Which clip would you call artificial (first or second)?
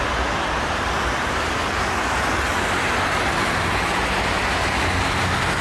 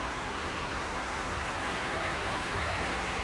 second